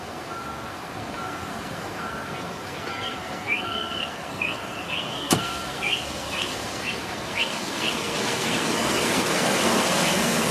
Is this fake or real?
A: fake